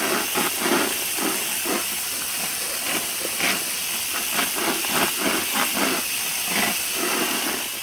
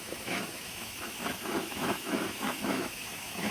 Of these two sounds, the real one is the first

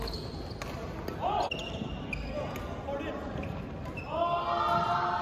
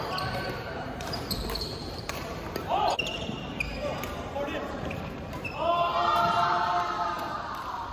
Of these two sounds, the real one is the first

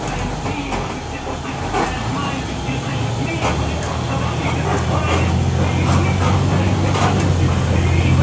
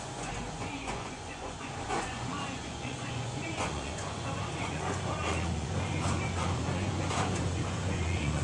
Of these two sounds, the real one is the first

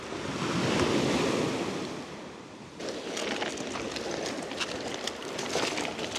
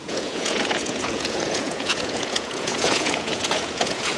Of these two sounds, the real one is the first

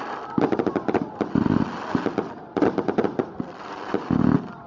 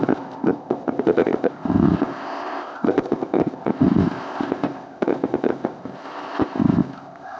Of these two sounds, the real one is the first